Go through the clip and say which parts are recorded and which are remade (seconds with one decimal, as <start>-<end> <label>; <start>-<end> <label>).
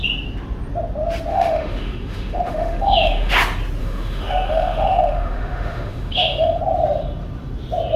0.0-1.3 recorded; 1.3-3.3 remade; 3.3-3.8 recorded; 3.8-6.6 remade; 6.6-8.0 recorded